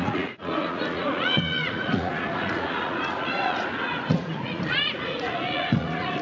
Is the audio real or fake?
fake